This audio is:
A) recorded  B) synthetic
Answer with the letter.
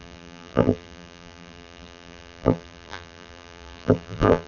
B